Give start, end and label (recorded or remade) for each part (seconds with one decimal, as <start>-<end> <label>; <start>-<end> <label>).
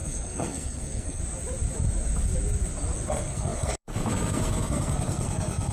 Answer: 0.0-1.2 remade; 1.2-3.1 recorded; 3.1-5.7 remade